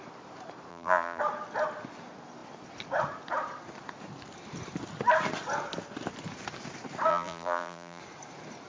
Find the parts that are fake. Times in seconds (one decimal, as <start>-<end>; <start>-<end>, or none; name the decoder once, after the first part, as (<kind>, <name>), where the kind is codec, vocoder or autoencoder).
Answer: 0.7-1.2 (vocoder, BigVGAN v2); 7.1-8.0